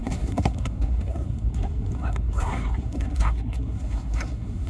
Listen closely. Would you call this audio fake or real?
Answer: fake